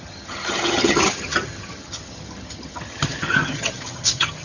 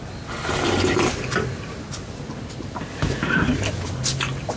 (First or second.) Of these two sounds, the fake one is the first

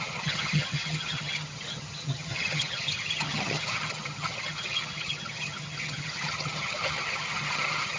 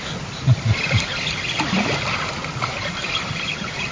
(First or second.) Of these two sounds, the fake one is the first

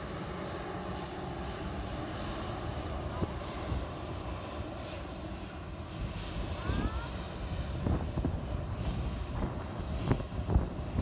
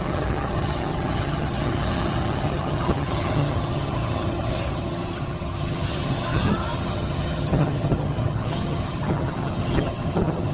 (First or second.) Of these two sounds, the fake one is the second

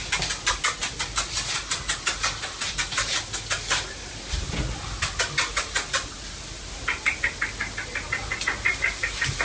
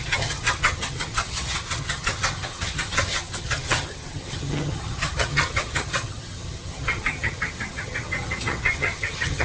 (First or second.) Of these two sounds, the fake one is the second